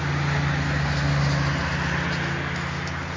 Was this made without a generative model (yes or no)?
yes